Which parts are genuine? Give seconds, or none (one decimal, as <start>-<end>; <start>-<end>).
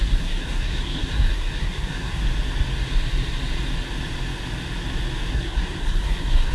2.2-5.3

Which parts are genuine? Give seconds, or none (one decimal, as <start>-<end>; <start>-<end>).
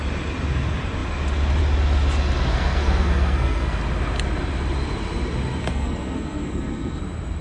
0.0-2.5; 3.8-5.6; 7.0-7.4